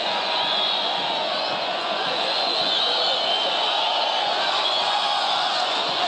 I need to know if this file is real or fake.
fake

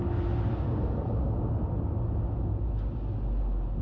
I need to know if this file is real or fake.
real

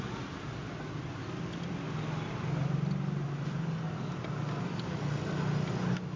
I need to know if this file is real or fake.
real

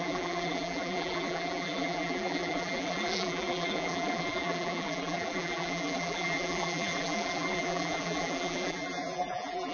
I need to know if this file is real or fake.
fake